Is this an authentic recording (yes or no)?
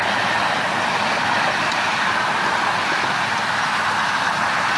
yes